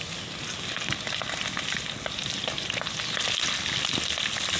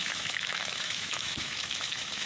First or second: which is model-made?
second